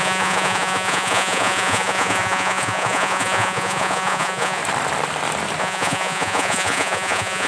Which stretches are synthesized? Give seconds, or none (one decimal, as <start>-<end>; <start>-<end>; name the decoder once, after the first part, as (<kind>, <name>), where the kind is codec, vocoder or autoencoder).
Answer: 0.0-4.6 (vocoder, Vocos); 5.6-7.5